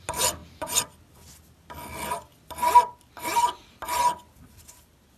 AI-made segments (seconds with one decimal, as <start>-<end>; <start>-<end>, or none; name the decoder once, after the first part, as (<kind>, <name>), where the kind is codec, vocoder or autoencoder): none